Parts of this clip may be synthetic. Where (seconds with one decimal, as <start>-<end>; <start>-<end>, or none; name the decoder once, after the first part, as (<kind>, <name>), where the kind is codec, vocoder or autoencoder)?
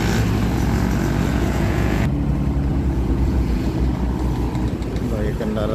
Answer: 1.3-2.1 (vocoder, Vocos); 2.7-3.7